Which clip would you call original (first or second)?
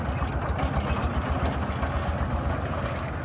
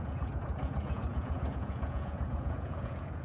first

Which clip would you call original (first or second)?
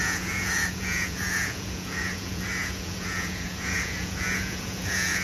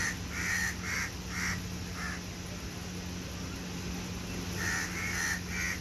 second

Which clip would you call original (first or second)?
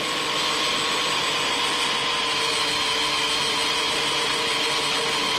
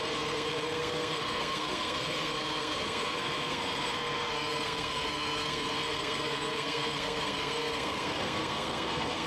first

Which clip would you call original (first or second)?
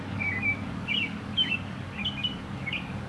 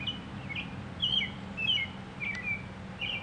second